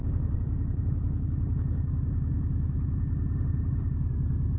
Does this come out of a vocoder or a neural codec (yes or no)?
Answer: no